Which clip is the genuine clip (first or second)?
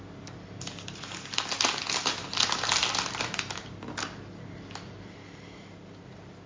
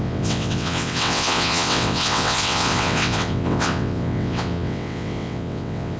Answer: first